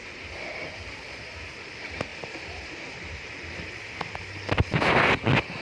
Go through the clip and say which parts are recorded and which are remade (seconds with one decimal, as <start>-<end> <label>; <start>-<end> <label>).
0.0-5.6 recorded

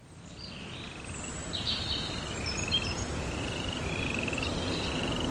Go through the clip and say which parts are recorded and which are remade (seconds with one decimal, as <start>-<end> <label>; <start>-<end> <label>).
0.0-1.3 recorded; 1.3-4.5 remade; 4.5-5.3 recorded

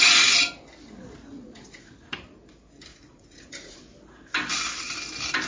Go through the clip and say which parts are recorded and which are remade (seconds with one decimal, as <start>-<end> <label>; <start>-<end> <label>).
0.0-1.3 recorded; 1.3-1.9 remade; 1.9-2.9 recorded; 2.9-3.8 remade; 3.8-5.5 recorded

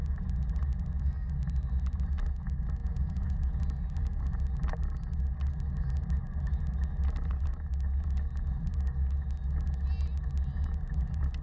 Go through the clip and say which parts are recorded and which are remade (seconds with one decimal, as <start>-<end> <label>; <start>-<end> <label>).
0.0-2.8 recorded; 2.8-3.6 remade; 3.6-11.4 recorded